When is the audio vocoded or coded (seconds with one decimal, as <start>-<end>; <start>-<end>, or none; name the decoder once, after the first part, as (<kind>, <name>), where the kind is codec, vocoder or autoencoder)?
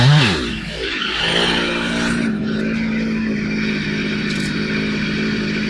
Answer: 0.5-1.2 (codec, DAC)